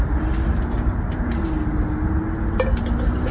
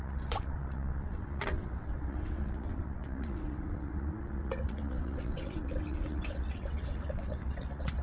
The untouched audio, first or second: first